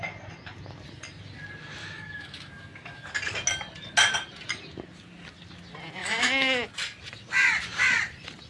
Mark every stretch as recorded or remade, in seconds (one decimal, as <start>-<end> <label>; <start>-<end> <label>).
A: 0.0-1.8 recorded; 1.8-3.1 remade; 3.1-6.0 recorded; 6.0-6.7 remade; 6.7-8.5 recorded